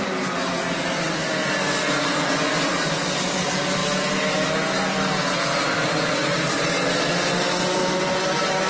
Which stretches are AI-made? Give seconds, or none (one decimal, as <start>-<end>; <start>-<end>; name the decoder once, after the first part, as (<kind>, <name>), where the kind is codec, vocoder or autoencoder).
none